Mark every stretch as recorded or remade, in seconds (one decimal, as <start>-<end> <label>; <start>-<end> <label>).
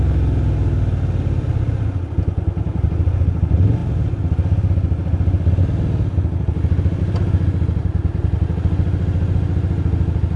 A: 0.0-10.4 recorded